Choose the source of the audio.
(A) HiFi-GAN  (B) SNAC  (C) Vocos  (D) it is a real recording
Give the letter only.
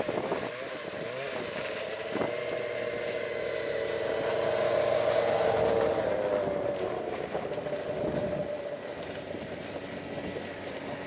D